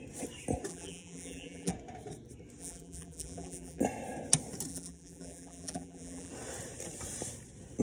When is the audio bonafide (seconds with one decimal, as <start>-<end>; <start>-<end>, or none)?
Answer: 0.0-0.7; 1.7-2.6; 3.8-4.7; 6.3-7.8